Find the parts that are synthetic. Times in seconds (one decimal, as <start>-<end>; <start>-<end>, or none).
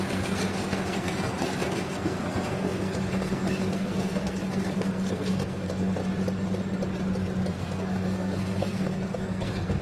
0.0-6.0; 7.5-9.8